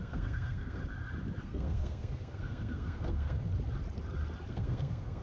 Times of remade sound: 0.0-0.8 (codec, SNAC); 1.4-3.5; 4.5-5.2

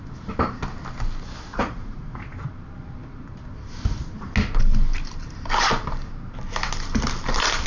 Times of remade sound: 1.5-2.2 (vocoder, Vocos)